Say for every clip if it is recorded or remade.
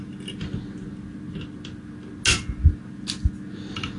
recorded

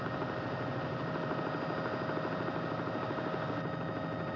recorded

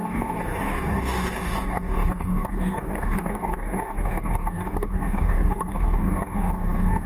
remade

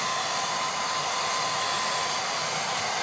recorded